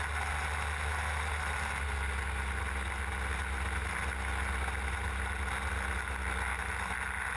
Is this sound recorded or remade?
recorded